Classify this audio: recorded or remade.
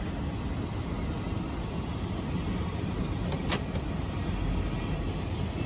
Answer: recorded